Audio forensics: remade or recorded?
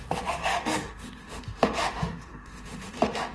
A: remade